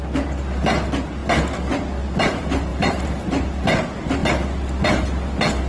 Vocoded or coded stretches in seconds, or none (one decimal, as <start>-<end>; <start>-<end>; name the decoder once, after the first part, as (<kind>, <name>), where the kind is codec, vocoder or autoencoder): 2.7-3.8 (vocoder, BigVGAN v2)